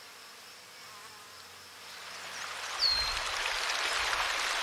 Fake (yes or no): no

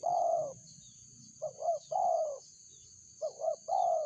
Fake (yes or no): yes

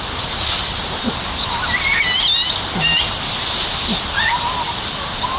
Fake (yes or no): no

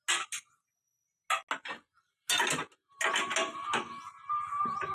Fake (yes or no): no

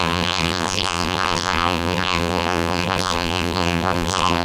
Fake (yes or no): yes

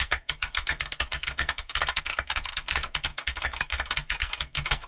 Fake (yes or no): yes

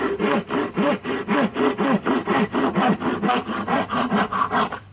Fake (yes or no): no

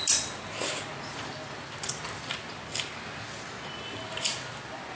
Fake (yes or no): no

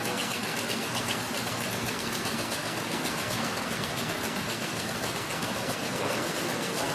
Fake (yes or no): yes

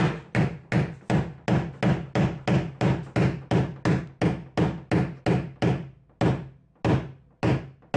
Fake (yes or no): no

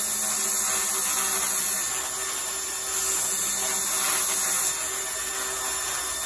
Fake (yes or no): no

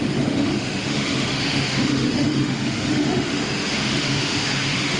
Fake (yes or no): yes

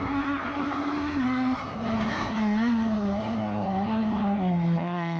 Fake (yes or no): yes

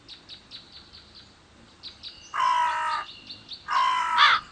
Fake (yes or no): no